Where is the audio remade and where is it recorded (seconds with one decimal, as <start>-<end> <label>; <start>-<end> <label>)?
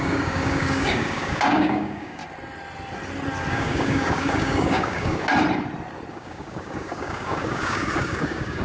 0.0-2.2 remade; 2.2-3.5 recorded; 3.5-5.3 remade; 5.3-6.1 recorded; 6.1-8.6 remade